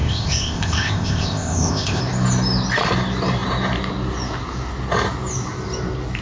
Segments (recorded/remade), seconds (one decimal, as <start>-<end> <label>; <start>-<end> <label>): 0.0-2.0 remade; 2.0-6.2 recorded